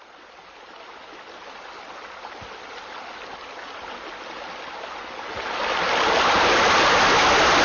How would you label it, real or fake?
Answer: real